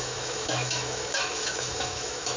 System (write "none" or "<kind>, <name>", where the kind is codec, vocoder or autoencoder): autoencoder, DAC-VAE